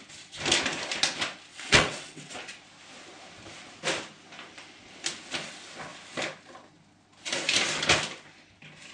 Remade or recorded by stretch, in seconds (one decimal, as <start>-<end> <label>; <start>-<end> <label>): 0.0-1.5 recorded; 1.5-2.3 remade; 2.3-8.9 recorded